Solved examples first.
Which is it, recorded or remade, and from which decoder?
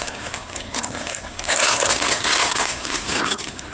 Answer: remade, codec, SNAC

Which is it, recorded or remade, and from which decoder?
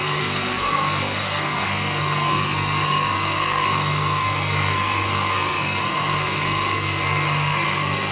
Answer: remade, codec, SNAC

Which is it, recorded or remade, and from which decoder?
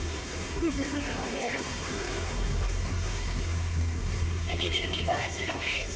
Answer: remade, codec, SNAC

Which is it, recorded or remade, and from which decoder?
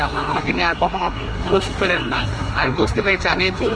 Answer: remade, codec, SNAC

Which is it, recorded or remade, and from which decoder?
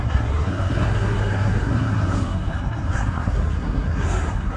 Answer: remade, codec, SNAC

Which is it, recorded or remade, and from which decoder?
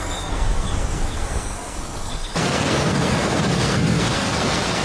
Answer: remade, codec, SNAC